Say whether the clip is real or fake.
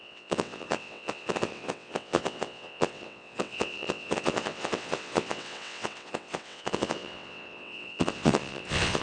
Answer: fake